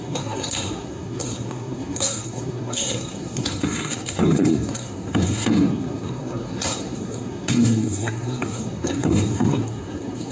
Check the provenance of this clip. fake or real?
fake